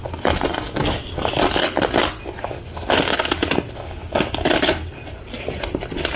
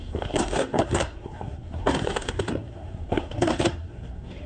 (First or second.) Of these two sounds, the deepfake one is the second